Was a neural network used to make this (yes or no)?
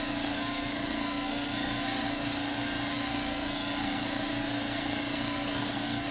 yes